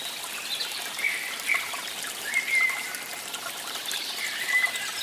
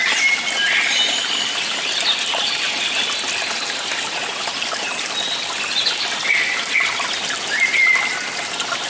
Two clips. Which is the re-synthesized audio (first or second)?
first